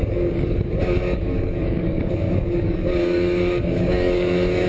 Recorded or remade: remade